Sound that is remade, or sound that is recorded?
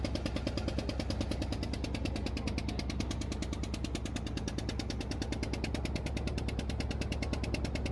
recorded